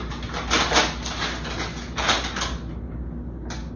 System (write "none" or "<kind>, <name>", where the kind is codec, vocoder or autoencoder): none